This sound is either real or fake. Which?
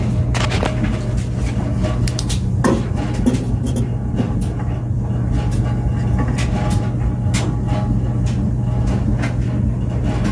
real